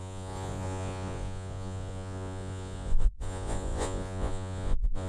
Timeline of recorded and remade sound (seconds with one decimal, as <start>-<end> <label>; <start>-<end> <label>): 0.0-5.1 remade